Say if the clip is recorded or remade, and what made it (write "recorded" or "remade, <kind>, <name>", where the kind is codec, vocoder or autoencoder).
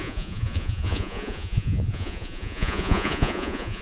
remade, vocoder, Vocos